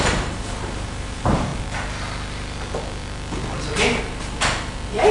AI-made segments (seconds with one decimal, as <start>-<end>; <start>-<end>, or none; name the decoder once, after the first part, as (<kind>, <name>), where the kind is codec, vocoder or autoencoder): 0.0-1.5 (vocoder, BigVGAN v2); 4.0-5.1